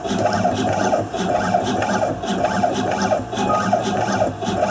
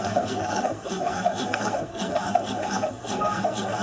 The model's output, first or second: second